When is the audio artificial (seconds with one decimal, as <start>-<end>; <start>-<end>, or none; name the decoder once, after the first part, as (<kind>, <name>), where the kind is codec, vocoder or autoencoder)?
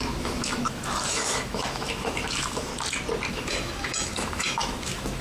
0.0-2.7 (autoencoder, DAC-VAE); 3.3-5.2